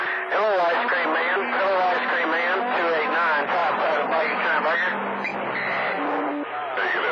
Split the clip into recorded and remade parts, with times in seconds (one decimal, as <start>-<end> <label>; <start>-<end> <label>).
0.0-3.6 recorded; 3.6-4.6 remade; 4.6-6.6 recorded; 6.6-7.1 remade